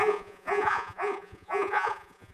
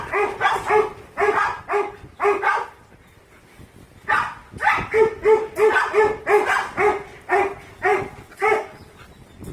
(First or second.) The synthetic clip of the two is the first